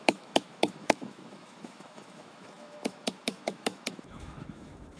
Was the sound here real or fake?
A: fake